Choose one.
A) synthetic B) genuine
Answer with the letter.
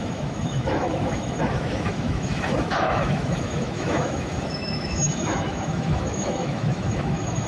A